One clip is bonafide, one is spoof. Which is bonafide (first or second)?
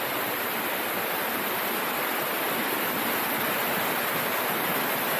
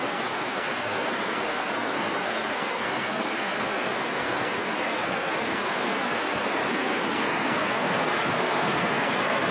first